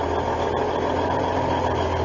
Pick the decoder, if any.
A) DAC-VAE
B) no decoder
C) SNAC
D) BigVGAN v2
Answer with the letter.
B